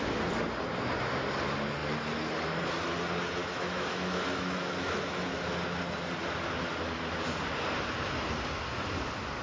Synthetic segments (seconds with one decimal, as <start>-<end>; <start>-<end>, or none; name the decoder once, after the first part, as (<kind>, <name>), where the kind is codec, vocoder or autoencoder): 3.4-5.5 (autoencoder, DAC-VAE)